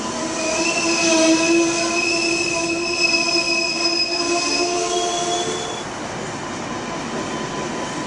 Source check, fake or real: real